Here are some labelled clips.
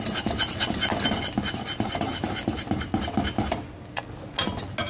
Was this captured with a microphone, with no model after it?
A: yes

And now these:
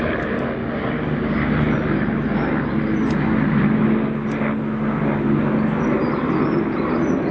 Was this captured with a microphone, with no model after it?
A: yes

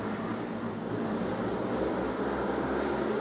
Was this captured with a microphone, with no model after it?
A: yes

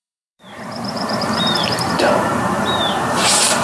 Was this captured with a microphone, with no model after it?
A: no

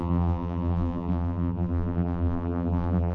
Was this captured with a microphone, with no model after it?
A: no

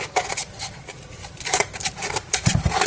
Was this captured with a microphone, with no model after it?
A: no